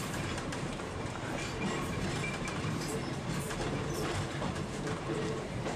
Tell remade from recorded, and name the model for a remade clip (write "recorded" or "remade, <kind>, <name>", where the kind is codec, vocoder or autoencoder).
remade, vocoder, BigVGAN v2